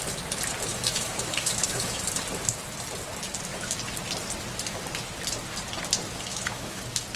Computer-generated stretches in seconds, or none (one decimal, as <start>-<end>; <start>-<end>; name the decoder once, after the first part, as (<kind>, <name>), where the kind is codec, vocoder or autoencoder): 0.7-2.0 (autoencoder, DAC-VAE); 6.3-6.8